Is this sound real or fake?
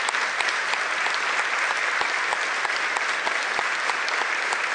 real